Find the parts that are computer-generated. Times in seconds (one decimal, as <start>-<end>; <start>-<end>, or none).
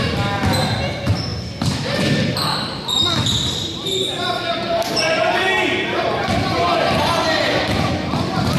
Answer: 1.3-6.0